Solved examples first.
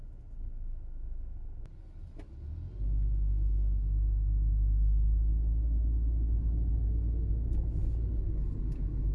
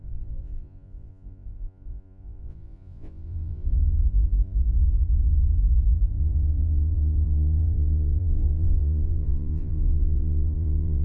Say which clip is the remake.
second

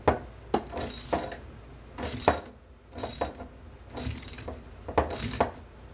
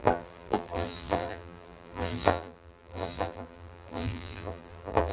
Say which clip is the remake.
second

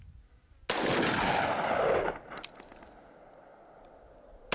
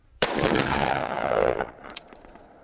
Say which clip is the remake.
second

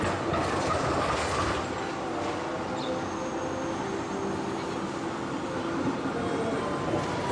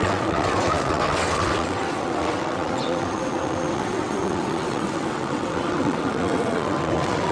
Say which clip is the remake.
second